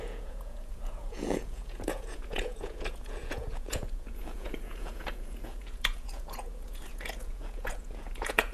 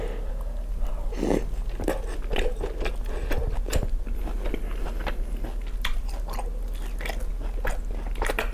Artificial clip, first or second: first